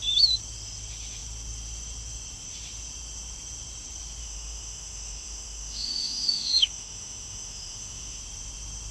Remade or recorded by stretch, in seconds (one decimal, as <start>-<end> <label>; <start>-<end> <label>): 0.0-4.2 recorded; 4.2-8.2 remade; 8.2-8.9 recorded